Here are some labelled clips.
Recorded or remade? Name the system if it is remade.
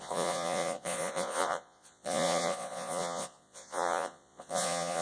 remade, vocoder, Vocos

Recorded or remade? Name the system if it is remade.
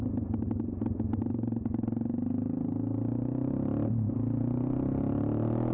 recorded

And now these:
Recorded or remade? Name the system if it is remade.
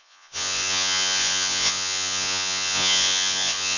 remade, vocoder, Vocos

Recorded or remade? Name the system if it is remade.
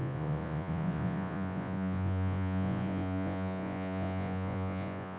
remade, vocoder, Vocos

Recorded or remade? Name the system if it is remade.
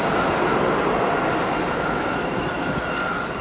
recorded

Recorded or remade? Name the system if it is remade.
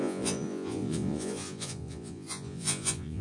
remade, vocoder, Vocos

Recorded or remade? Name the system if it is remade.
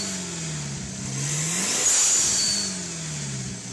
recorded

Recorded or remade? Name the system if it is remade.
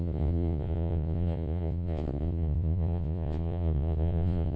remade, vocoder, Vocos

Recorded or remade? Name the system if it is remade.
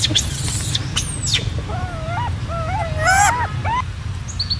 recorded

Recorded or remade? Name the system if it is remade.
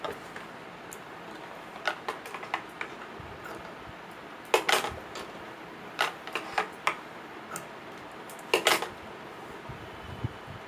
recorded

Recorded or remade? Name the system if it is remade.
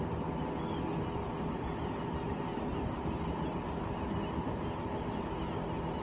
recorded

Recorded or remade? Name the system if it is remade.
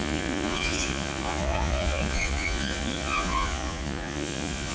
remade, vocoder, Vocos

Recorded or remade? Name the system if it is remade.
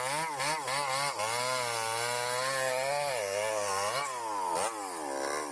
recorded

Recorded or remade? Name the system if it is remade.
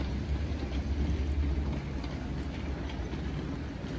recorded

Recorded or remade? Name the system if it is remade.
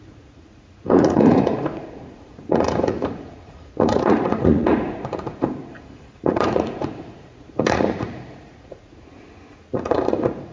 remade, vocoder, Vocos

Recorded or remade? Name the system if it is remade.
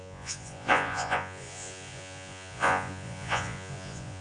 remade, vocoder, Vocos